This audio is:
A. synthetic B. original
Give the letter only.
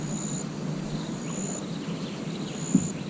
B